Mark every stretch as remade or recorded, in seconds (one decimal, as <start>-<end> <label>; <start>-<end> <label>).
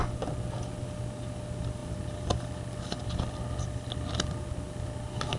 0.0-5.4 recorded